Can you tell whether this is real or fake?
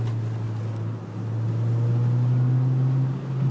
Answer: real